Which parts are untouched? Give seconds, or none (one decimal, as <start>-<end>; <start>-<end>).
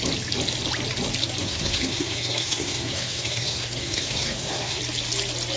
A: 0.0-1.4; 4.8-5.6